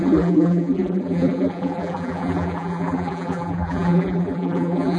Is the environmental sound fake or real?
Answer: fake